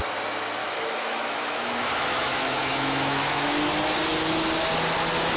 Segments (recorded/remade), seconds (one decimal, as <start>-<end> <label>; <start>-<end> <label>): 0.0-0.6 recorded; 0.6-3.6 remade; 3.6-5.4 recorded